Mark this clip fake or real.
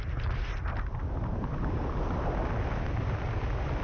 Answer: real